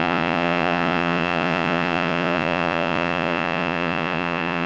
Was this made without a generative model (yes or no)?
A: no